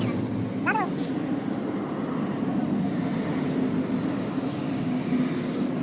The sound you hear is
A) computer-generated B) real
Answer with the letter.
B